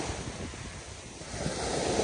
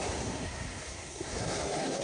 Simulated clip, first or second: second